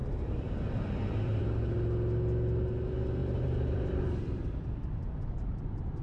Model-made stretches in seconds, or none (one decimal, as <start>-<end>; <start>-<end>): 0.0-1.6; 3.2-5.3